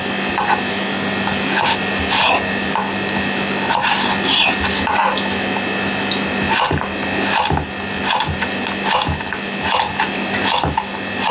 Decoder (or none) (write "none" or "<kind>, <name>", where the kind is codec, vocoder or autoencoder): none